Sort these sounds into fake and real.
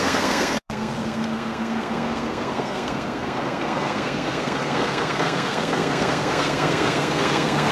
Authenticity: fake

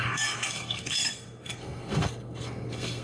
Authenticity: fake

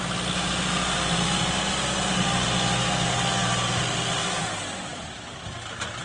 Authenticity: real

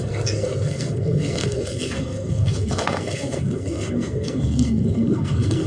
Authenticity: fake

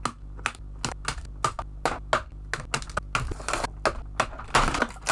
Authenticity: real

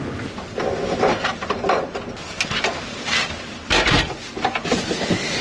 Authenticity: real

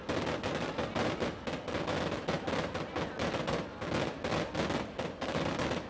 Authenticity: real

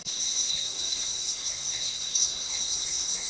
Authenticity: fake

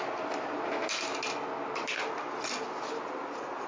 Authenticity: real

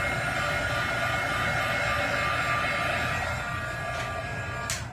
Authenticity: real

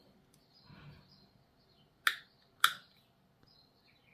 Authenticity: real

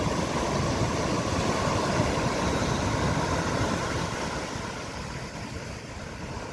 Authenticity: real